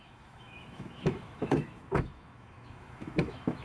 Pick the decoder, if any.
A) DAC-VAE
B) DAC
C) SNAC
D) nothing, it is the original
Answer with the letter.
A